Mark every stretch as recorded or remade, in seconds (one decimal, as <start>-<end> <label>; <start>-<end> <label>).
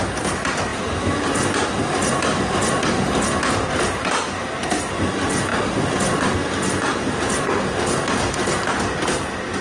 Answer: 0.0-9.6 recorded